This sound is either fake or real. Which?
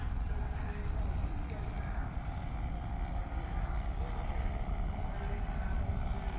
real